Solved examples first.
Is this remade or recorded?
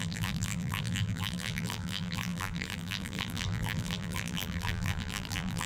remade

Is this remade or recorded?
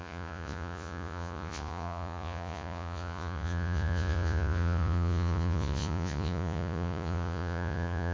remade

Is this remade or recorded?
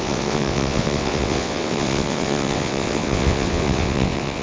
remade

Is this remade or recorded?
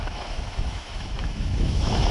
remade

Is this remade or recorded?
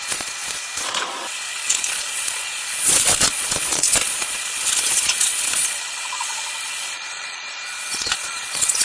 remade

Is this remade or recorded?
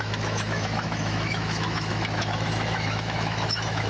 remade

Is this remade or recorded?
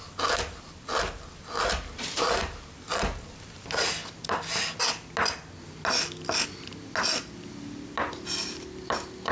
recorded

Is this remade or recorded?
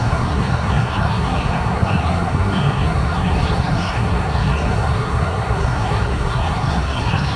remade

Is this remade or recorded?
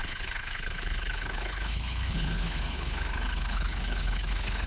remade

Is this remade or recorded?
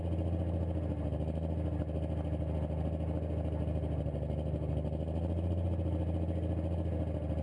recorded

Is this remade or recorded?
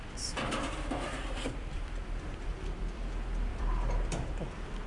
remade